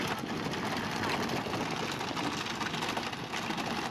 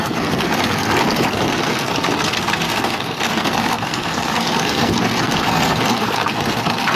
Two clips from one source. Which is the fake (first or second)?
second